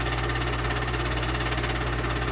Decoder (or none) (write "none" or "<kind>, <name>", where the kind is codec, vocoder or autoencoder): none